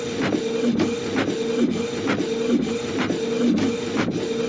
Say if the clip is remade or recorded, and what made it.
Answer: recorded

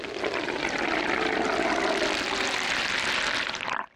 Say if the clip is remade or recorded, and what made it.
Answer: recorded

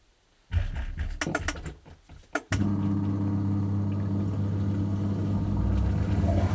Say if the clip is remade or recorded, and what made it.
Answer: recorded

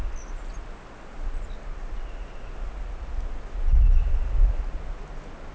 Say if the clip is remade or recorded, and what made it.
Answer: recorded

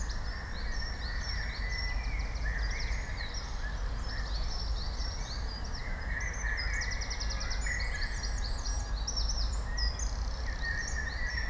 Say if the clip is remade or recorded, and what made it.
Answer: recorded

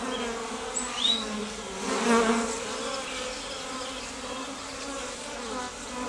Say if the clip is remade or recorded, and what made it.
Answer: recorded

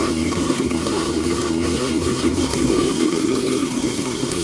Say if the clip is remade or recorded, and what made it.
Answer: remade, codec, SNAC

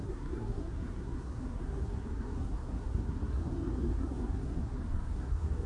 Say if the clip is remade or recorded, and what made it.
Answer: remade, codec, SNAC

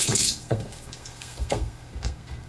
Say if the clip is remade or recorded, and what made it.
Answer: remade, codec, SNAC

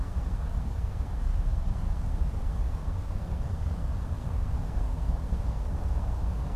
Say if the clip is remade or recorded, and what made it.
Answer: remade, codec, SNAC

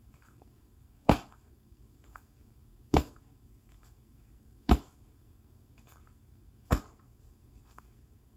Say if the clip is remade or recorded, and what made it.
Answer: remade, codec, SNAC